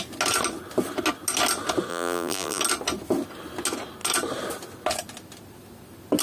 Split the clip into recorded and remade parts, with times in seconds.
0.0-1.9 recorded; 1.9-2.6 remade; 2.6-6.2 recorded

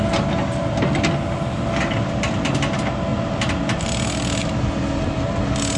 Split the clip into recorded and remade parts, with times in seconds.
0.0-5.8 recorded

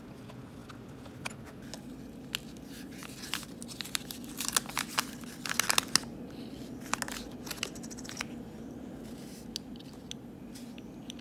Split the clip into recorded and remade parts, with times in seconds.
0.0-11.2 recorded

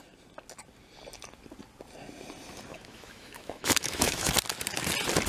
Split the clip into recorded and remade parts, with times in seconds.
0.0-2.7 recorded; 2.7-4.3 remade; 4.3-5.3 recorded

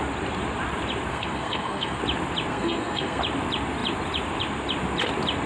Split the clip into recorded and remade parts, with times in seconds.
0.0-1.1 recorded; 1.1-2.0 remade; 2.0-2.5 recorded; 2.5-3.2 remade; 3.2-5.5 recorded

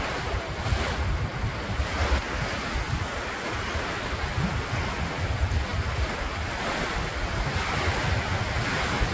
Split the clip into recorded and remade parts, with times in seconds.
0.0-5.7 recorded; 5.7-7.1 remade; 7.1-9.1 recorded